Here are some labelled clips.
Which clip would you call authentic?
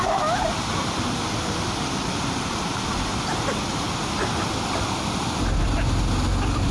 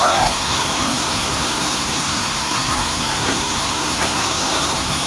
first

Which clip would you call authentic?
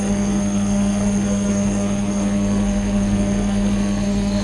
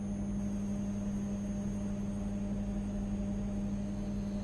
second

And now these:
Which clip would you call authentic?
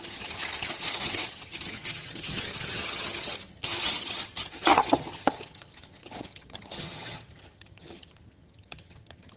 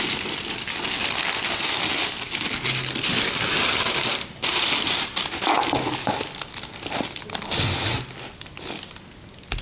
second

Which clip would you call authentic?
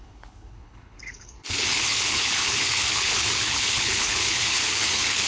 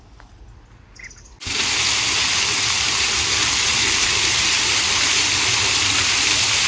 second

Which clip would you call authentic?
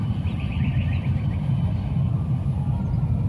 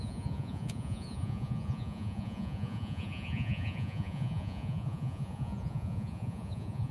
first